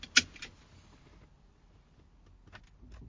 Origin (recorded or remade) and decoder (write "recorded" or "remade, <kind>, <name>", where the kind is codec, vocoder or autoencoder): recorded